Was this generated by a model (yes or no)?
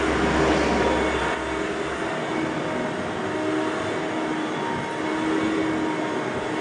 no